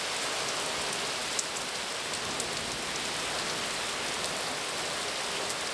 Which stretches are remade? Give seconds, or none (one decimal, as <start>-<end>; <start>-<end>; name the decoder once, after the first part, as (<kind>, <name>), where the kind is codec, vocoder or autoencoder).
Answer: none